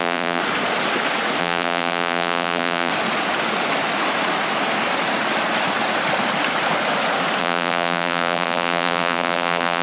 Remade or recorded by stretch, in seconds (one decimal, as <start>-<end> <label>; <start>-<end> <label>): 0.0-0.4 remade; 0.4-1.4 recorded; 1.4-2.9 remade; 2.9-7.4 recorded; 7.4-9.8 remade